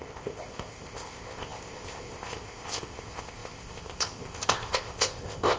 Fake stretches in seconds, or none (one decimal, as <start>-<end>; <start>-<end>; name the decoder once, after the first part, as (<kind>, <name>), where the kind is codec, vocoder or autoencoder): 0.0-5.6 (codec, ZipCodec)